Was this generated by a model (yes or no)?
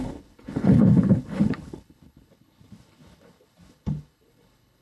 yes